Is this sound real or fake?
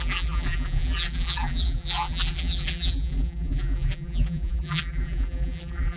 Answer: fake